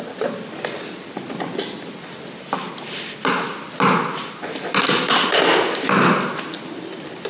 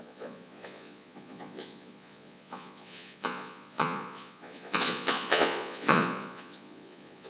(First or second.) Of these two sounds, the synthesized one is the second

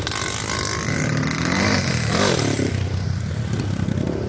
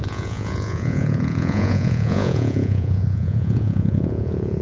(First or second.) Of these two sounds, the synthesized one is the second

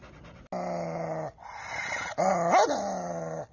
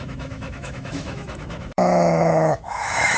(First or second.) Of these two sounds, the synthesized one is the second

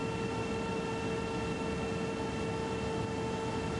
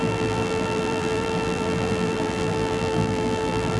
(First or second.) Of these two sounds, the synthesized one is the second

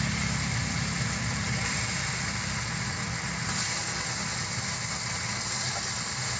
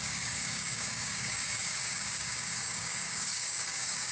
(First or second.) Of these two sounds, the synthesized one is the second